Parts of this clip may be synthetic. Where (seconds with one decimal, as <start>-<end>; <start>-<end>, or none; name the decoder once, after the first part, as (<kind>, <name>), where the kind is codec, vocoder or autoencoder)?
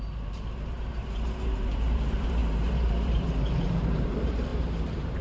0.0-5.2 (vocoder, BigVGAN v2)